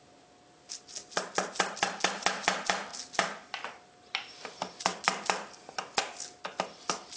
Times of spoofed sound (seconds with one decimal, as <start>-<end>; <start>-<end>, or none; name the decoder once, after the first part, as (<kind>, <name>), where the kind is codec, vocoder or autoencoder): none